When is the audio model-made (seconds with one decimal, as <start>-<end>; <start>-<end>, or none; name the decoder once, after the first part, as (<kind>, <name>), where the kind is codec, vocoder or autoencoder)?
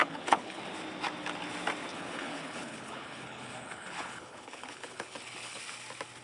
0.0-0.6 (codec, HILCodec); 1.9-5.6